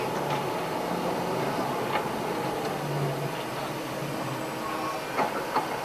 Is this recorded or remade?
recorded